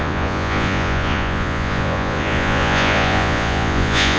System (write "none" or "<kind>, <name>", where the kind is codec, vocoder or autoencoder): vocoder, Vocos